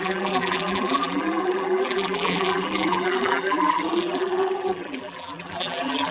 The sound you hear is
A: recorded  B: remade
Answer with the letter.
B